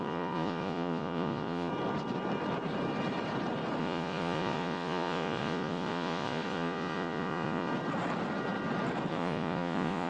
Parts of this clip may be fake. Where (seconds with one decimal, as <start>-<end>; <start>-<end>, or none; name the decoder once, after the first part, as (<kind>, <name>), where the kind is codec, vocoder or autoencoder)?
0.0-1.7 (vocoder, Vocos); 3.8-7.7; 9.1-10.1

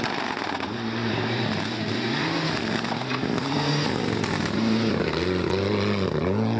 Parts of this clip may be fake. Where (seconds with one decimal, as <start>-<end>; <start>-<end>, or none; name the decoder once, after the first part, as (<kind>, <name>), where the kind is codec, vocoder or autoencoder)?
1.0-5.0 (vocoder, BigVGAN v2)

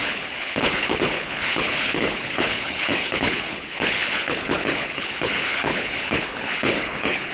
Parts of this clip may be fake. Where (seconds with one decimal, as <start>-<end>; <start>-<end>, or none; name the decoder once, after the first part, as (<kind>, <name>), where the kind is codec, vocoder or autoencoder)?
0.0-7.3 (codec, HILCodec)

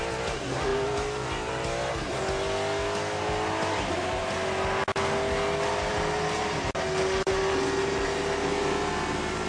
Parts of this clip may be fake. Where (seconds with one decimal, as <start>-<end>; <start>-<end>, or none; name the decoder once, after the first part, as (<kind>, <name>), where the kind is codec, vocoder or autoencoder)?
none

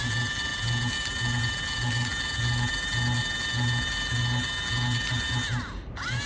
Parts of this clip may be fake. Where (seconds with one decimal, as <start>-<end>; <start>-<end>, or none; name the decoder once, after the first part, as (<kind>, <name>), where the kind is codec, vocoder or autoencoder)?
none

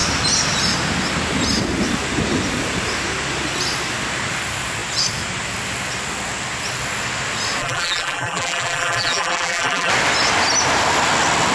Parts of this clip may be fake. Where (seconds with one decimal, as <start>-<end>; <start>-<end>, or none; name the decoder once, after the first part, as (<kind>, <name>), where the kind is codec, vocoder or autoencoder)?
7.6-9.9 (vocoder, BigVGAN v2)

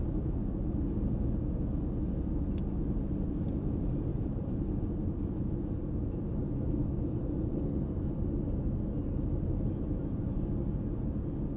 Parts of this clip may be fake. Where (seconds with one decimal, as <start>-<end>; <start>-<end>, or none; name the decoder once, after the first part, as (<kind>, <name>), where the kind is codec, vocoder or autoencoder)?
none

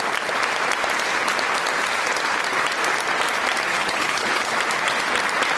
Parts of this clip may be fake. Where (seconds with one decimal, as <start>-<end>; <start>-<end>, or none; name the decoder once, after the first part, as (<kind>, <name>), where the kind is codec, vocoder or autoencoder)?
3.7-4.5 (codec, HILCodec)